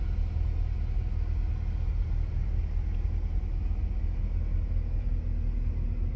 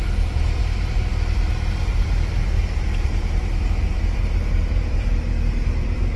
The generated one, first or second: second